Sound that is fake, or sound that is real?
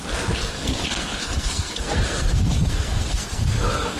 fake